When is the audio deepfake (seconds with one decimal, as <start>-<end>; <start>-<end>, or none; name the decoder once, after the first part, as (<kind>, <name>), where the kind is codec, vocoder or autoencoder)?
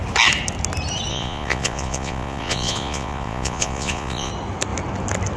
1.1-4.3 (vocoder, Vocos)